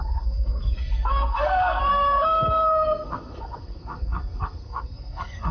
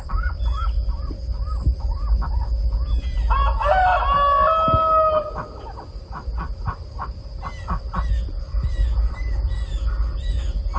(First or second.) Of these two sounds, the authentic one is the second